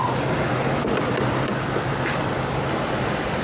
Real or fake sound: fake